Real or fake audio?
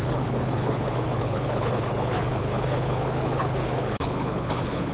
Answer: fake